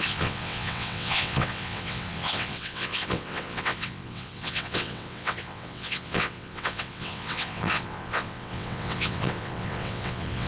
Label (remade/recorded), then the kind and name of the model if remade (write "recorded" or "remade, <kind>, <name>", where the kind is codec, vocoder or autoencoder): remade, vocoder, WaveNeXt